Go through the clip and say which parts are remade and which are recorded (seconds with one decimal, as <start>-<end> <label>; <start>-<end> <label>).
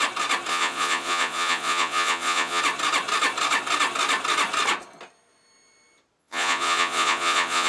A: 0.0-0.5 recorded; 0.5-2.6 remade; 2.6-6.2 recorded; 6.2-7.7 remade